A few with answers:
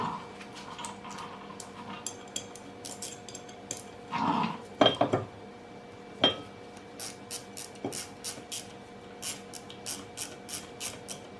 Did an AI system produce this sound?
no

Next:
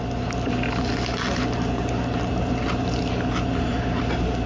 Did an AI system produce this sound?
no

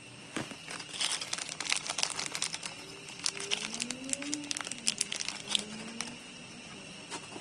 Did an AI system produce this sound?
no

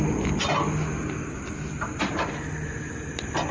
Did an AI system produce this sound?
no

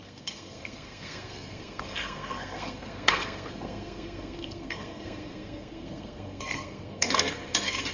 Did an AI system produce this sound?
yes